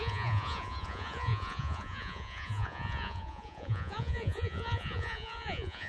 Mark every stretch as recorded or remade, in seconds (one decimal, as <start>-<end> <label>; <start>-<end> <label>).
0.0-5.9 remade